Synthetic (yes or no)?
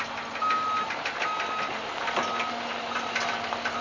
no